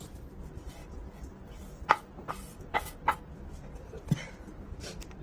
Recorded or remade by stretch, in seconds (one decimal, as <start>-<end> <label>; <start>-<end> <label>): 0.0-0.8 remade; 0.8-3.9 recorded; 3.9-5.2 remade